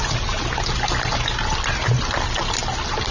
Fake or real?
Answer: real